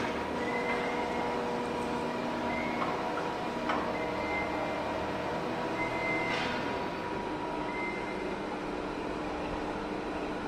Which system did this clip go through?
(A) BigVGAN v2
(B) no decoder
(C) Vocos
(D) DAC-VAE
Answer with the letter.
B